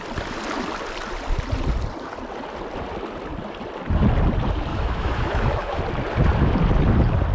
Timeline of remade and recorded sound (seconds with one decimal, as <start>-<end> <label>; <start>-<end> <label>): 0.0-4.7 recorded; 4.7-5.8 remade; 5.8-7.3 recorded